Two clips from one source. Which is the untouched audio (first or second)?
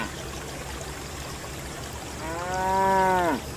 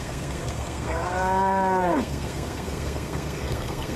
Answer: first